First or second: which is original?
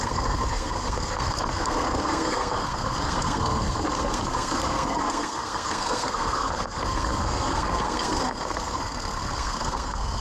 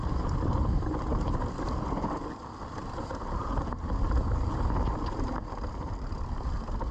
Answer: second